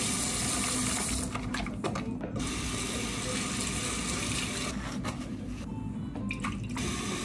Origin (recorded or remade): recorded